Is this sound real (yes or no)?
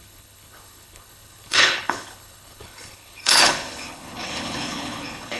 no